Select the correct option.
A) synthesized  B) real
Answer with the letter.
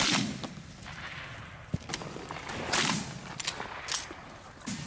B